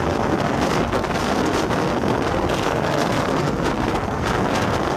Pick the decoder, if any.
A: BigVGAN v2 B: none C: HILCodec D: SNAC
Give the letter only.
D